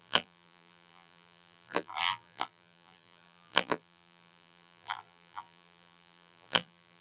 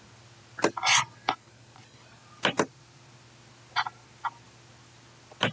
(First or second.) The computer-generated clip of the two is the first